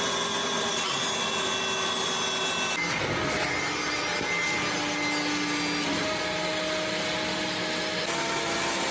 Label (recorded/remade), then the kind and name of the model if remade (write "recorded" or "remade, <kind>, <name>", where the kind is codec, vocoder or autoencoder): recorded